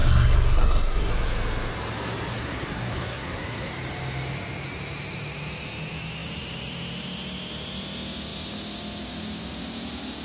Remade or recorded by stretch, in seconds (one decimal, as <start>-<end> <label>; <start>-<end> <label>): 0.0-1.1 remade; 1.1-2.3 recorded; 2.3-3.7 remade; 3.7-10.2 recorded

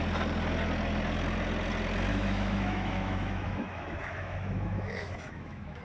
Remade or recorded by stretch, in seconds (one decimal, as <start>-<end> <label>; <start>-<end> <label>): 0.0-2.1 recorded; 2.1-5.8 remade

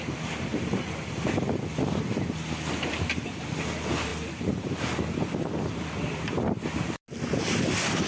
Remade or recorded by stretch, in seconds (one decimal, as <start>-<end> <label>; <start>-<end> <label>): 0.0-0.5 recorded; 0.5-3.3 remade; 3.3-8.1 recorded

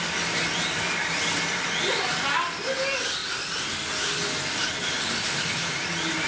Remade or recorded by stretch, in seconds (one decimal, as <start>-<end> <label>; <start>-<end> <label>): 0.0-6.3 recorded

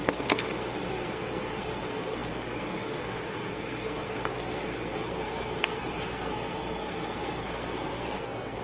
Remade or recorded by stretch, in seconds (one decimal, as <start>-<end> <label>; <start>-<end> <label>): 0.0-8.6 remade

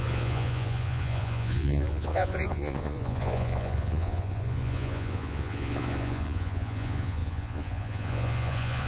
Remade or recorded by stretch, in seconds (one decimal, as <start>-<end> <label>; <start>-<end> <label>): 0.0-8.9 remade

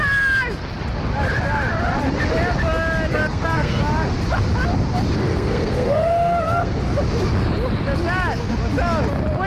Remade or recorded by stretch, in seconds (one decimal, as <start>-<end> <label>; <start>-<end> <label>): 0.0-3.1 recorded; 3.1-3.8 remade; 3.8-5.3 recorded; 5.3-6.8 remade; 6.8-9.5 recorded

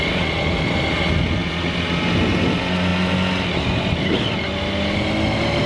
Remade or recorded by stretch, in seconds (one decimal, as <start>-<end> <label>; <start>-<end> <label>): 0.0-5.7 recorded